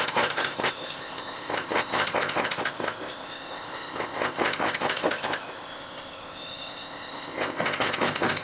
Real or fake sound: fake